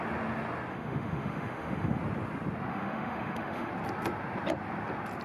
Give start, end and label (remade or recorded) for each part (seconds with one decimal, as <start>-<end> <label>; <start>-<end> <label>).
0.0-0.7 recorded; 0.7-2.0 remade; 2.0-2.7 recorded; 2.7-3.7 remade; 3.7-5.2 recorded